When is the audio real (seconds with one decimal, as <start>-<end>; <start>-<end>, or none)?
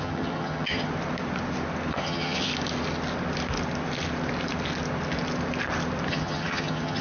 0.9-1.9; 2.5-6.1